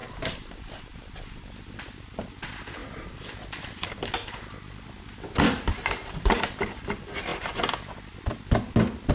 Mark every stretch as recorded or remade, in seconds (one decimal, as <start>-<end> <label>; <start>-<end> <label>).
0.0-1.5 remade; 1.5-9.1 recorded

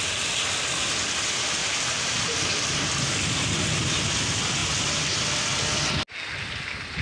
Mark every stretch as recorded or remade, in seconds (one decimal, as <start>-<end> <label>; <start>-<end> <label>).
0.0-1.6 recorded; 1.6-2.2 remade; 2.2-7.0 recorded

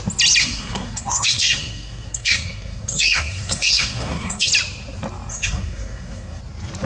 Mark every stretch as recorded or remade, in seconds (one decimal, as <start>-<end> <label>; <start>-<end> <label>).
0.0-0.4 recorded; 0.4-4.5 remade; 4.5-5.3 recorded; 5.3-6.4 remade; 6.4-6.9 recorded

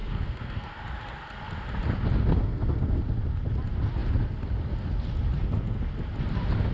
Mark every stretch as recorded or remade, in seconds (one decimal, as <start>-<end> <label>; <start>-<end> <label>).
0.0-0.7 remade; 0.7-2.3 recorded; 2.3-3.0 remade; 3.0-6.7 recorded